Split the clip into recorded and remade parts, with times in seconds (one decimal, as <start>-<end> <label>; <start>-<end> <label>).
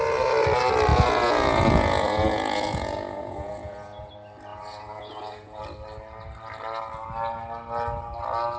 0.0-0.9 recorded; 0.9-4.1 remade; 4.1-4.5 recorded; 4.5-5.6 remade; 5.6-8.6 recorded